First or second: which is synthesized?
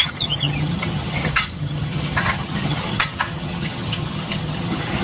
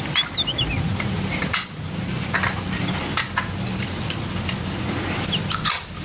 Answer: first